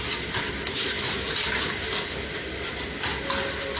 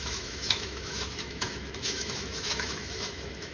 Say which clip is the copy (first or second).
second